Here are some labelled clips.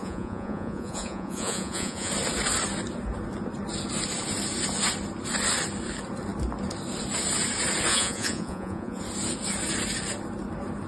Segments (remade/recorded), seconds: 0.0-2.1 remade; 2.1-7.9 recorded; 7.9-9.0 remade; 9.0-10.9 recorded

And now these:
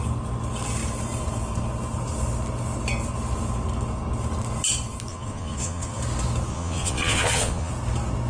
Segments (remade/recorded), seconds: 0.0-5.1 recorded; 5.1-6.0 remade; 6.0-6.5 recorded; 6.5-7.7 remade; 7.7-8.3 recorded

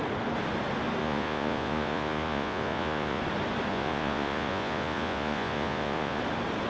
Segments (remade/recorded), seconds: 0.0-1.0 recorded; 1.0-3.2 remade; 3.2-3.7 recorded; 3.7-6.2 remade; 6.2-6.7 recorded

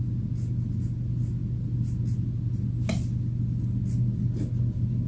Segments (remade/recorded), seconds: 0.0-5.1 recorded

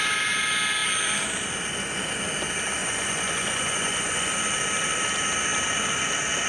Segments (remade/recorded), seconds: 0.0-2.8 recorded; 2.8-4.3 remade; 4.3-6.5 recorded

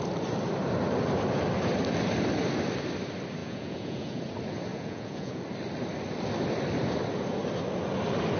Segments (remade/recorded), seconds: 0.0-3.4 recorded; 3.4-4.2 remade; 4.2-4.7 recorded; 4.7-5.4 remade; 5.4-8.4 recorded

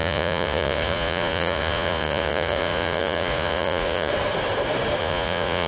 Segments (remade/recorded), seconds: 0.0-4.1 remade; 4.1-5.0 recorded; 5.0-5.7 remade